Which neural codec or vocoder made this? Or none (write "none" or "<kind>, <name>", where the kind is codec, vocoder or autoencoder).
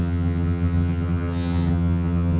vocoder, HiFi-GAN